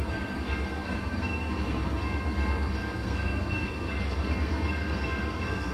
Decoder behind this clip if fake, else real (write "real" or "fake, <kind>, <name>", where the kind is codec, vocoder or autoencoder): fake, codec, SNAC